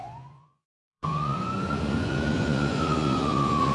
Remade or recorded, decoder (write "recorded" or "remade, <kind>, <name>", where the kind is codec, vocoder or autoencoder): remade, vocoder, Vocos